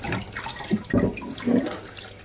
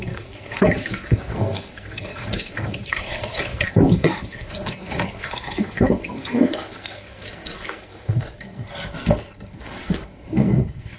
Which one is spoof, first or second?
second